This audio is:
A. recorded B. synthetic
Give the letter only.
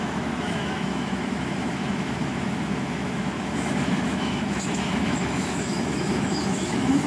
B